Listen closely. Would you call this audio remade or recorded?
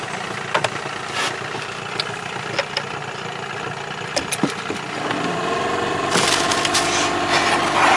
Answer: recorded